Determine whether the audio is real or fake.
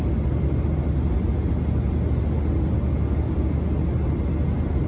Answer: real